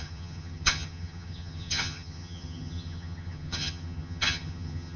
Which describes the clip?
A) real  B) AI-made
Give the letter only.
B